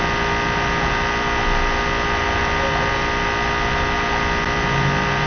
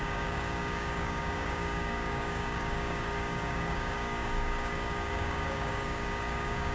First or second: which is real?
first